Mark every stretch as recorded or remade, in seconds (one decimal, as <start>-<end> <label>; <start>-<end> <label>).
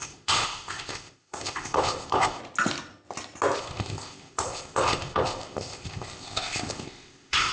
0.0-2.4 remade; 2.4-3.6 recorded; 3.6-7.5 remade